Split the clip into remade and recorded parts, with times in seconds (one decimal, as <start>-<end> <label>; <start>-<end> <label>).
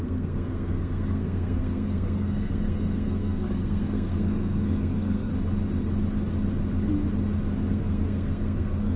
0.0-5.3 remade; 5.3-7.7 recorded; 7.7-9.0 remade